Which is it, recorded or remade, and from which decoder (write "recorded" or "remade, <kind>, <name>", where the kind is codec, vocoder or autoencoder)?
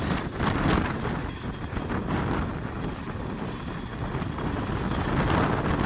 recorded